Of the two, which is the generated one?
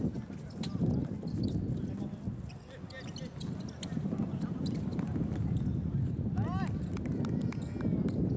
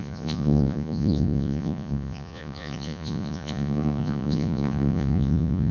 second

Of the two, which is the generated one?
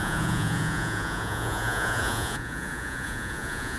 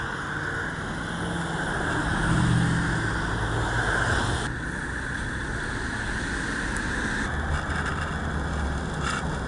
first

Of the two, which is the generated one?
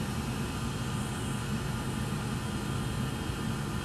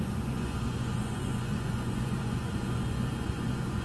second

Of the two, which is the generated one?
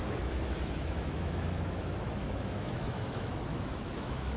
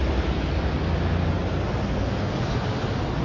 first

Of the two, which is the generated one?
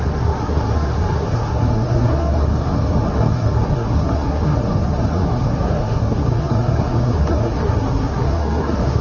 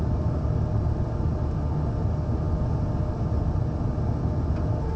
first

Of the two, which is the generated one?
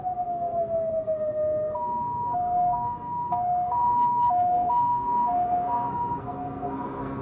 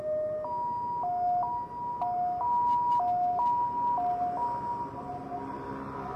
first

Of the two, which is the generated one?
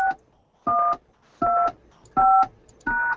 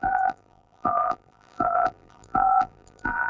second